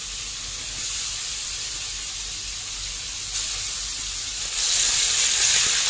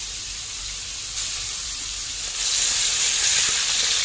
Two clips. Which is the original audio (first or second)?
first